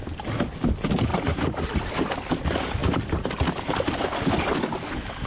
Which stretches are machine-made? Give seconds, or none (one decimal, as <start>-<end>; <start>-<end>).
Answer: 1.1-1.6